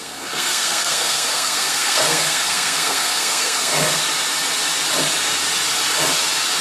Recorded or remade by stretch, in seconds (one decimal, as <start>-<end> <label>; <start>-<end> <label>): 0.0-4.0 remade; 4.0-6.6 recorded